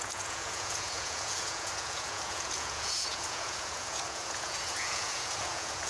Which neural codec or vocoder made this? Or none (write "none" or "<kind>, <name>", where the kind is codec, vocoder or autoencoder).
vocoder, Vocos